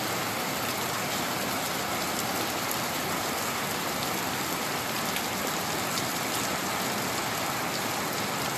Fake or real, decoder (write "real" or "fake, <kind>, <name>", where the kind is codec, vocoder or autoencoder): real